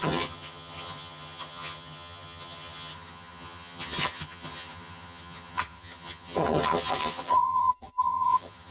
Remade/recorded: remade